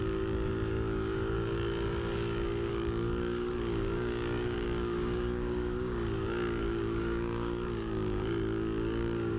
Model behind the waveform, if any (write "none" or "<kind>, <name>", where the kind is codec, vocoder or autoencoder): codec, DAC